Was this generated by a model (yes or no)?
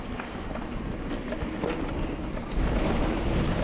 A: no